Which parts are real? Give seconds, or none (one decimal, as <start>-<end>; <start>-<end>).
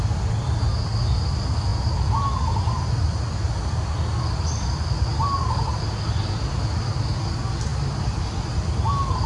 0.0-9.3